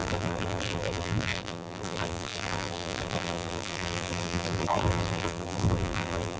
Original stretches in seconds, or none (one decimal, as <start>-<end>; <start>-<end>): none